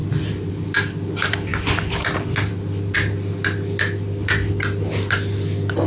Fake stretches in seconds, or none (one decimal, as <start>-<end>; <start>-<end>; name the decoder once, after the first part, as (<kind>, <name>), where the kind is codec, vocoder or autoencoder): none